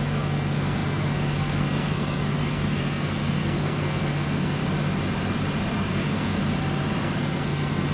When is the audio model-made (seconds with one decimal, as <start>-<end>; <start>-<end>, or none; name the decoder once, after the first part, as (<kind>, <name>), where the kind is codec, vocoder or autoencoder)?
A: 0.0-4.6 (codec, SNAC); 5.9-6.4; 7.0-7.9